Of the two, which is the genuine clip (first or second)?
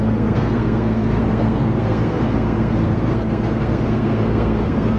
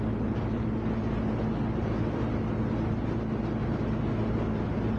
second